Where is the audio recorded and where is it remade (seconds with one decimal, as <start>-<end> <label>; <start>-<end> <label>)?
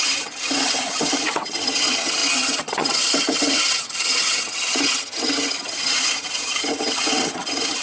0.0-7.8 remade